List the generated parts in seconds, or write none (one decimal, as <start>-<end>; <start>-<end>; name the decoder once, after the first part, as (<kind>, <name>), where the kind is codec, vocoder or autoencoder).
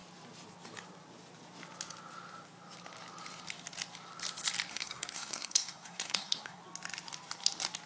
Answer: 4.7-6.6 (codec, SNAC)